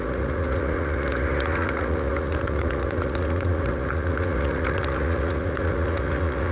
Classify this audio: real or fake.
fake